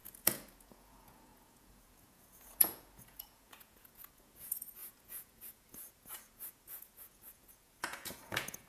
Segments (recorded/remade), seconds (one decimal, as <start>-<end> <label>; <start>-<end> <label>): 0.0-8.7 remade